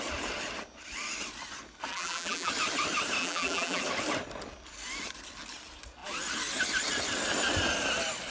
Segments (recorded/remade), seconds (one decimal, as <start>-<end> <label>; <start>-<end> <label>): 0.0-1.9 recorded; 1.9-2.5 remade; 2.5-3.2 recorded; 3.2-3.8 remade; 3.8-8.3 recorded